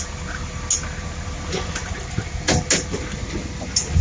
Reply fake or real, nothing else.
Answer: real